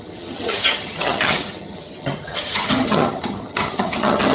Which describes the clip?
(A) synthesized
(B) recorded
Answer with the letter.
A